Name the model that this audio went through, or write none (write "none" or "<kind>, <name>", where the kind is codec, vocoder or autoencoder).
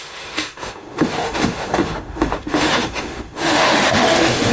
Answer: autoencoder, DAC-VAE